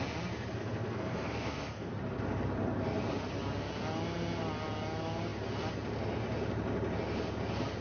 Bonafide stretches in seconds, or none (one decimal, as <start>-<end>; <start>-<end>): 0.0-0.6; 2.0-7.8